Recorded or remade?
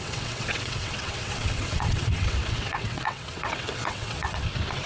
remade